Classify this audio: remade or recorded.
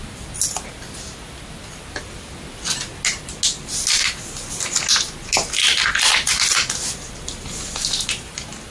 recorded